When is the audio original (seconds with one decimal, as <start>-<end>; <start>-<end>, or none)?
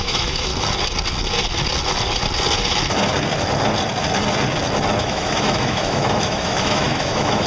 0.5-5.0